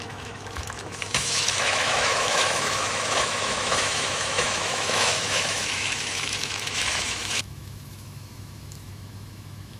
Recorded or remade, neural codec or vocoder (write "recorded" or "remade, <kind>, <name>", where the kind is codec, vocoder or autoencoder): remade, autoencoder, DAC-VAE